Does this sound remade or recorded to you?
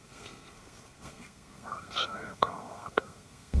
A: remade